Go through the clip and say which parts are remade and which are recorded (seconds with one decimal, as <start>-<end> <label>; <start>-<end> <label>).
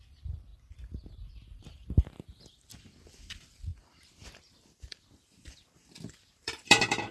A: 0.0-7.1 remade